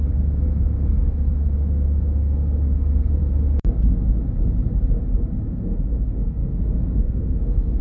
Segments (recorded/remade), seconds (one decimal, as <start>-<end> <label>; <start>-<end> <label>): 0.0-3.2 remade; 3.2-5.5 recorded; 5.5-7.8 remade